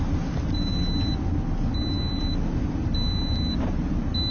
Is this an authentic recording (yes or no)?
yes